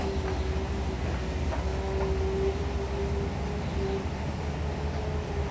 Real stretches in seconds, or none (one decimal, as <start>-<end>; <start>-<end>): 0.0-5.5